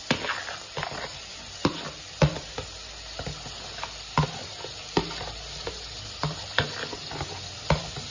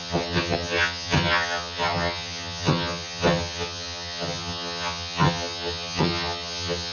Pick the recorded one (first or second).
first